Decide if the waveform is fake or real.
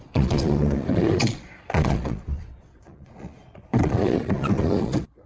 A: fake